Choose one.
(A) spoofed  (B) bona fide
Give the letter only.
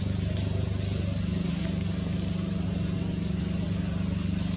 B